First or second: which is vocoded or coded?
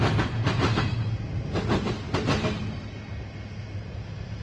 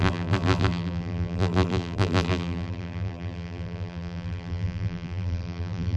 second